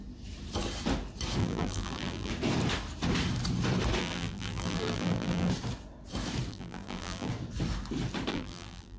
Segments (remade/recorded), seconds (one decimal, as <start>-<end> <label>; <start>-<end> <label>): 0.0-1.4 recorded; 1.4-2.3 remade; 2.3-4.0 recorded; 4.0-5.5 remade; 5.5-6.5 recorded; 6.5-7.3 remade; 7.3-8.3 recorded; 8.3-9.0 remade